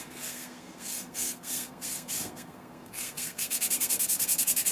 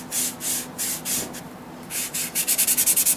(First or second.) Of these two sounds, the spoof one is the first